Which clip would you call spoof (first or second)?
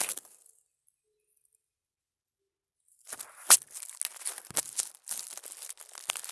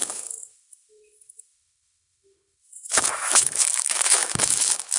second